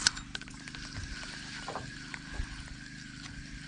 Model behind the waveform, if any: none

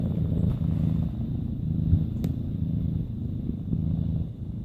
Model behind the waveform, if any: none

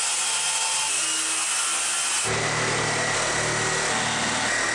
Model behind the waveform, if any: none